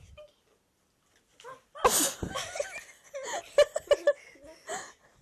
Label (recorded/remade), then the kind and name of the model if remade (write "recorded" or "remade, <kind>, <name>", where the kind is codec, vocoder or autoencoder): recorded